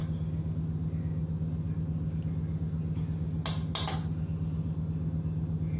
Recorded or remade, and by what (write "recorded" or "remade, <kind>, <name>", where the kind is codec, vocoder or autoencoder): recorded